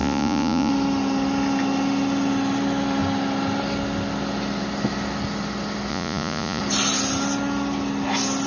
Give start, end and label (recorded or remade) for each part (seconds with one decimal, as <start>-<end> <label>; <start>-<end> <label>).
0.0-0.7 remade; 0.7-5.9 recorded; 5.9-6.6 remade; 6.6-8.5 recorded